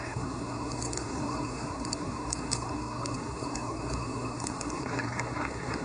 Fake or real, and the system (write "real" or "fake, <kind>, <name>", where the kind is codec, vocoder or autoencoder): fake, codec, SNAC